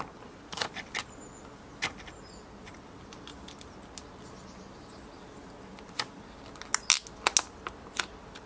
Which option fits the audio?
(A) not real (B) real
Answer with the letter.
B